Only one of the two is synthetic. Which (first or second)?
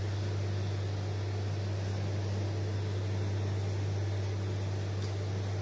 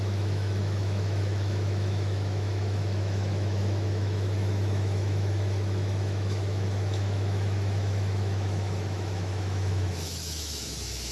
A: second